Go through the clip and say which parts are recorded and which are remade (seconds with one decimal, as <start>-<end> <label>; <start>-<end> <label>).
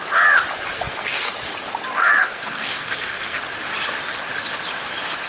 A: 0.0-0.7 recorded; 0.7-1.3 remade; 1.3-2.0 recorded; 2.0-3.4 remade; 3.4-5.3 recorded